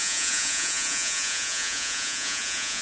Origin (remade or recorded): remade